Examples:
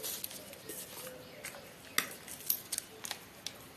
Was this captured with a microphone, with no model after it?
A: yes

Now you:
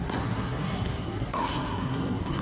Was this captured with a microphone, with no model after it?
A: no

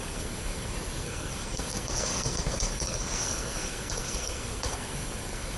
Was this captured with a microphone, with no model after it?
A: no